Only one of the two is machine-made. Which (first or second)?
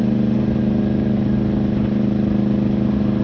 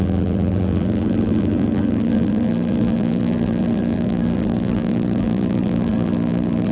second